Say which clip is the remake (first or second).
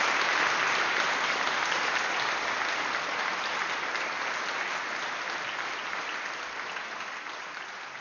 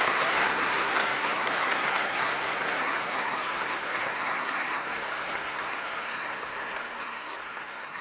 second